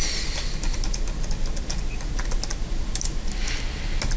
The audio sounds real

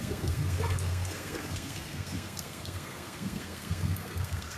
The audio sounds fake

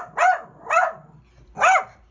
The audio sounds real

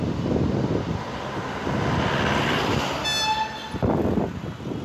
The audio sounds real